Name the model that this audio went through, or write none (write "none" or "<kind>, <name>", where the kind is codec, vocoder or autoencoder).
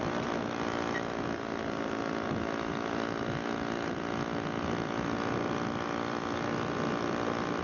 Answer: none